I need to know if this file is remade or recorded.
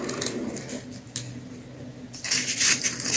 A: recorded